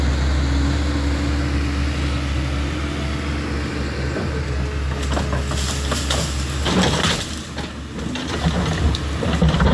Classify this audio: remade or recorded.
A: recorded